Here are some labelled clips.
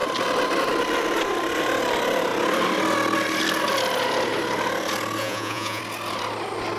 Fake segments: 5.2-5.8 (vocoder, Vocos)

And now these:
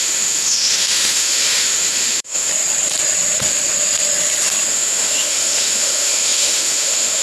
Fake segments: 0.0-2.5 (autoencoder, DAC-VAE); 4.7-7.2